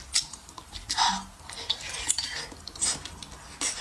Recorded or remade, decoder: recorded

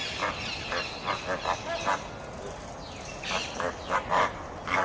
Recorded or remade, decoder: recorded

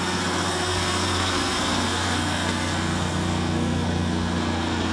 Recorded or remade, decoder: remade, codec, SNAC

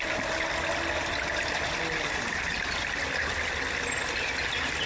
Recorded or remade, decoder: recorded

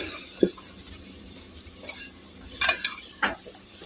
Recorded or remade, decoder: remade, vocoder, BigVGAN v2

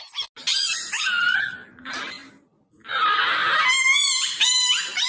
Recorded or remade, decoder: recorded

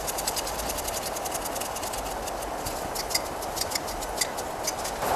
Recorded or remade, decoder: recorded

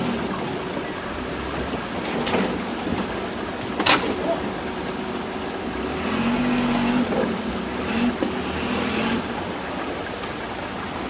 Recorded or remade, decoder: recorded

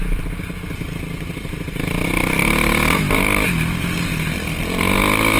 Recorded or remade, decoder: recorded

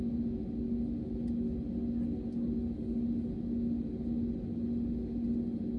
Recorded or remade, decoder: recorded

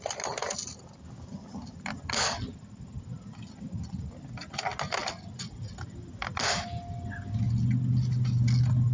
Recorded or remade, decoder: recorded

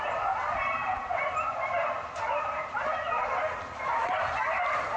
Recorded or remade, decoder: recorded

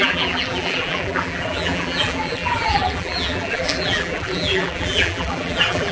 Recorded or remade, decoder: remade, vocoder, BigVGAN v2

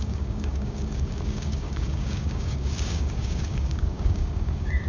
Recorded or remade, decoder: remade, codec, DAC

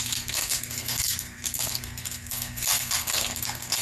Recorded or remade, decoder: remade, codec, SNAC